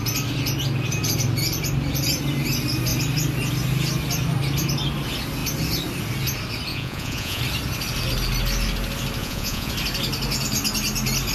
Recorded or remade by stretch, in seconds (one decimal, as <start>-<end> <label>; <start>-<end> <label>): 0.0-6.7 recorded; 6.7-7.4 remade; 7.4-9.2 recorded; 9.2-9.7 remade; 9.7-11.3 recorded